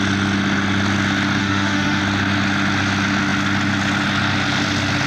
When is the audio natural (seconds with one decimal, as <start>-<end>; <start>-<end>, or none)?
0.0-1.4; 2.0-5.1